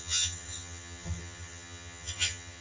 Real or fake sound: fake